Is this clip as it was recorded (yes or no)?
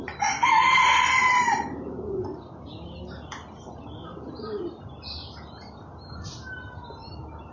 yes